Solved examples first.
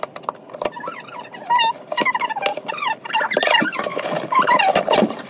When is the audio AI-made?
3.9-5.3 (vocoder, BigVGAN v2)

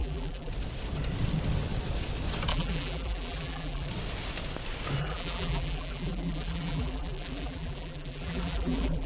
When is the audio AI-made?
0.0-0.5 (vocoder, BigVGAN v2); 2.5-3.9; 5.0-9.1

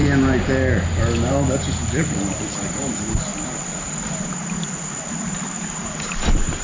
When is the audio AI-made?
2.4-3.3 (vocoder, BigVGAN v2); 5.1-6.6

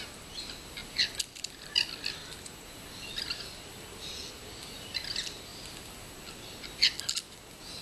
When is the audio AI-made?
none